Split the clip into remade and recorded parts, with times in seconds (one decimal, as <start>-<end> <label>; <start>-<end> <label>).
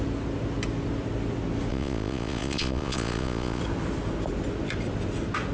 0.0-1.7 recorded; 1.7-3.6 remade; 3.6-5.5 recorded